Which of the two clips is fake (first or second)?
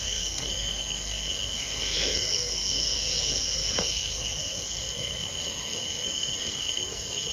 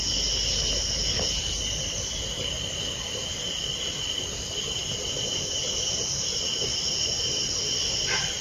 first